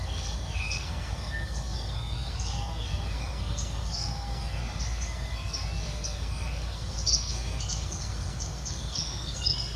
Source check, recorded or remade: remade